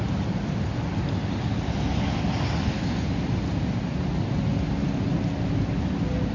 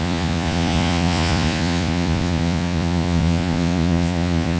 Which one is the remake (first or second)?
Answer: second